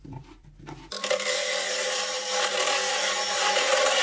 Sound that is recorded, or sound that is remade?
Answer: recorded